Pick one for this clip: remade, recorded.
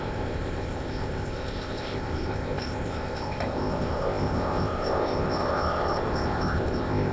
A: remade